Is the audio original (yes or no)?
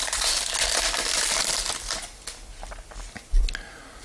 yes